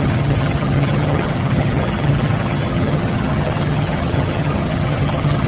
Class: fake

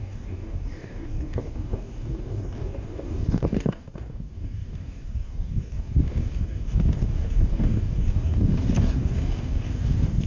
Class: fake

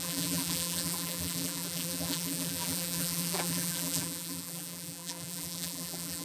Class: fake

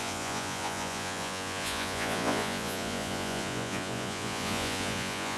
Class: fake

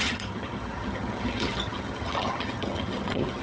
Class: fake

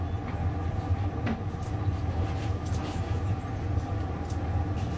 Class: real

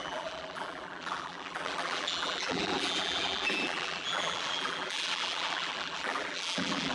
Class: fake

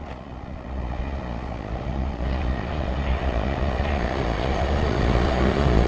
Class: fake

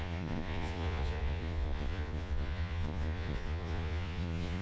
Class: fake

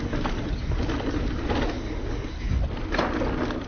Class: real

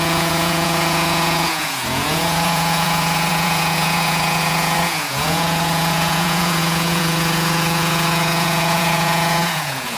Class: fake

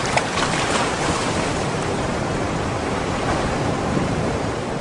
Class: fake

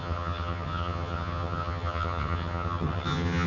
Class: fake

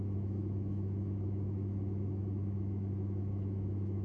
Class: fake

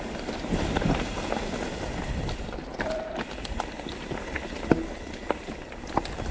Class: real